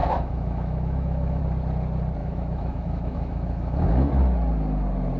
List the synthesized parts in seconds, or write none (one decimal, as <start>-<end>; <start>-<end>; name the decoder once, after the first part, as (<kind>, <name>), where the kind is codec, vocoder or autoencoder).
0.0-1.4 (autoencoder, DAC-VAE); 2.2-4.1